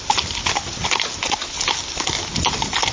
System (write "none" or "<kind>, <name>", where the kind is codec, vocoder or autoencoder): none